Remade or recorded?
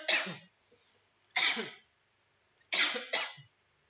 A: recorded